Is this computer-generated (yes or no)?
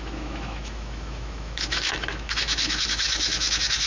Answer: yes